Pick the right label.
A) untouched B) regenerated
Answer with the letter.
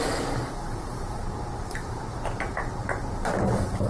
B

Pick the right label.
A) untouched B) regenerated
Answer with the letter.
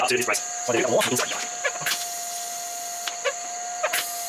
A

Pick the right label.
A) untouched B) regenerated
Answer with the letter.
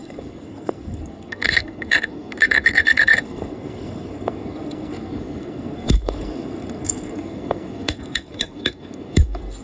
B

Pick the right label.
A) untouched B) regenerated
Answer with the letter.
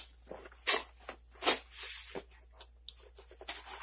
A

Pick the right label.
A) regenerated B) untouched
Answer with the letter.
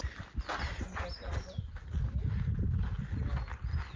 B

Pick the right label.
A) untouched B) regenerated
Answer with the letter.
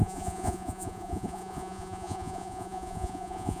B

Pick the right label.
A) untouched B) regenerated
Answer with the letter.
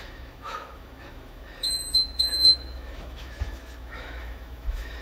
B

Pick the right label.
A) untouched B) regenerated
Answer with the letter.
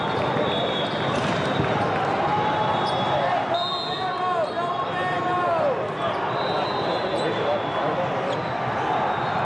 A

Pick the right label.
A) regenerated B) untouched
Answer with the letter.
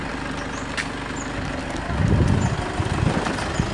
B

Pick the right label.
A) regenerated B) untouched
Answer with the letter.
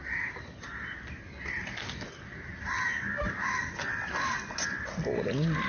B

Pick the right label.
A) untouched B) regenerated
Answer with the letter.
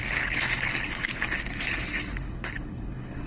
B